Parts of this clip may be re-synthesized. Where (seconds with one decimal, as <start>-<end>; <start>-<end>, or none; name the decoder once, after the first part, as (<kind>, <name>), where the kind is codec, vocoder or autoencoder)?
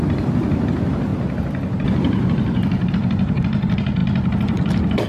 0.0-1.1 (vocoder, BigVGAN v2); 2.9-5.1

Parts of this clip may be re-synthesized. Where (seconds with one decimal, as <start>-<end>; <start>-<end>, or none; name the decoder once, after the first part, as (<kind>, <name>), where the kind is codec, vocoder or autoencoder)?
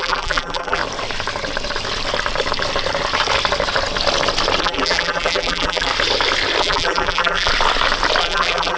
0.0-0.8 (vocoder, BigVGAN v2); 4.6-5.9; 6.6-7.5; 8.2-8.8